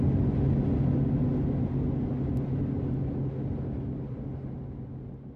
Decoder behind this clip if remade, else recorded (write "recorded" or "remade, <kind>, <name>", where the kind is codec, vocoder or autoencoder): recorded